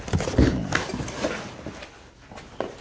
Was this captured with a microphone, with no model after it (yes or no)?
yes